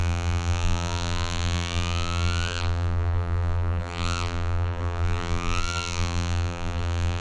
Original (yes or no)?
no